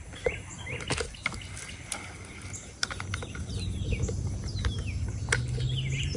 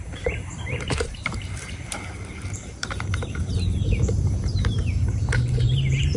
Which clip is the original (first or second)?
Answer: first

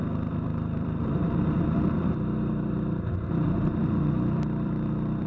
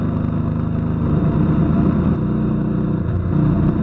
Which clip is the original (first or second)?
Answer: second